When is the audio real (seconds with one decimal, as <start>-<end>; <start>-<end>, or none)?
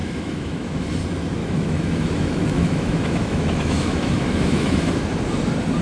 0.9-1.4; 4.9-5.8